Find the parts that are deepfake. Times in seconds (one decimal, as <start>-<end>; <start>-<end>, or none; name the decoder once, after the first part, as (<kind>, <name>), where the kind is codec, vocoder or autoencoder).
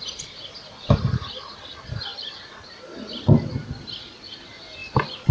none